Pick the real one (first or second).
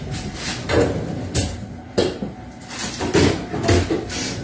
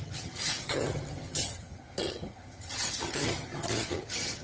first